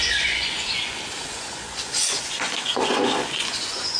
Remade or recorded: remade